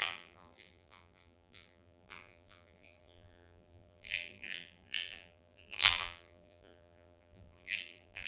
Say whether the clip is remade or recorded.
remade